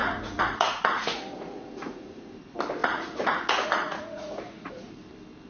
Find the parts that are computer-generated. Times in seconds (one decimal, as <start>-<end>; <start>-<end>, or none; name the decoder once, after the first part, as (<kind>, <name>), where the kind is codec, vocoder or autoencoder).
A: 0.0-2.3 (vocoder, Vocos); 2.8-4.9